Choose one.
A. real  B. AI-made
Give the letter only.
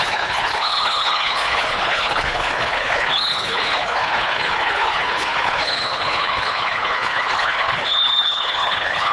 B